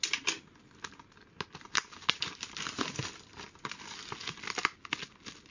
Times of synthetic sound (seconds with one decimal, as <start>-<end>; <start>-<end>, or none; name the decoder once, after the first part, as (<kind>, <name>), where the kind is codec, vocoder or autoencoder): none